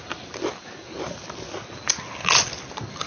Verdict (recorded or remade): recorded